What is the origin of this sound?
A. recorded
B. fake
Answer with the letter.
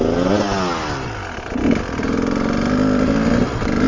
A